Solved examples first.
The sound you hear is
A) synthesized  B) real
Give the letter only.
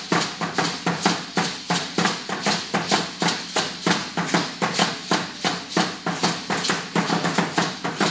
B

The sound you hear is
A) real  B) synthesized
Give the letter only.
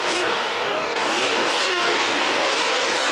B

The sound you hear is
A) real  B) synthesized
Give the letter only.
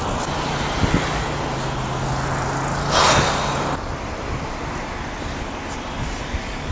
A